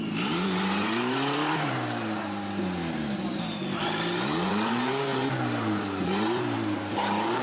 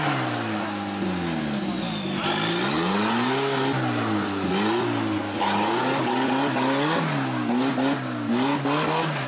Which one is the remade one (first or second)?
first